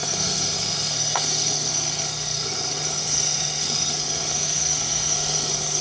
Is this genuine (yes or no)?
no